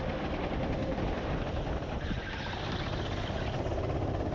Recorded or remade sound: recorded